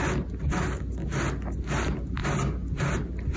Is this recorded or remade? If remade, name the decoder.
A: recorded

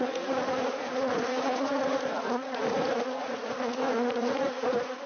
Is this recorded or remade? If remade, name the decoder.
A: remade, vocoder, Vocos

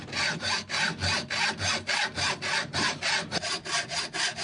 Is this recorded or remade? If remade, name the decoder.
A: recorded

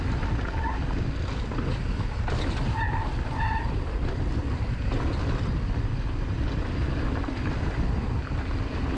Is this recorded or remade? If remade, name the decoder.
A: recorded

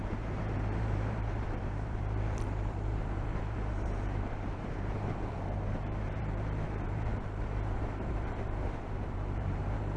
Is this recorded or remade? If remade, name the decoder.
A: remade, vocoder, BigVGAN v2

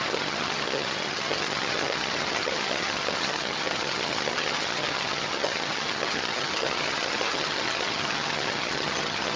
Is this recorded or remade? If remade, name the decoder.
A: remade, vocoder, HiFi-GAN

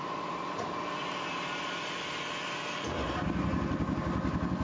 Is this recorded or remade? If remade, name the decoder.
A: recorded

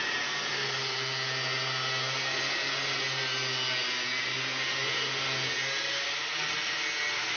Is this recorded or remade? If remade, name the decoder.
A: recorded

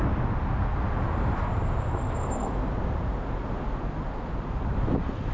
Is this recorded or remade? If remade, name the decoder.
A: recorded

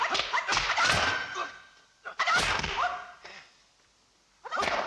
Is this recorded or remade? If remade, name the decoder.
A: recorded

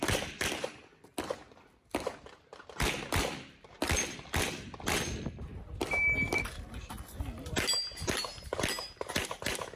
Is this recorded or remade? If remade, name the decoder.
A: remade, vocoder, BigVGAN v2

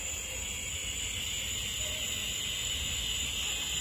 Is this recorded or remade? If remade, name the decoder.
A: recorded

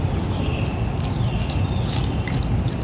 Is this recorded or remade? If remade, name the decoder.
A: recorded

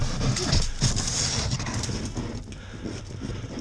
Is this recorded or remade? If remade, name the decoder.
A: recorded